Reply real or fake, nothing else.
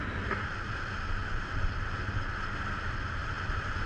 real